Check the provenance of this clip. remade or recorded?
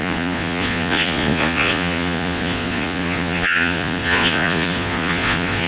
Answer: remade